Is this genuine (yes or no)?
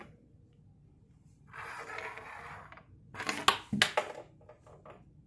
yes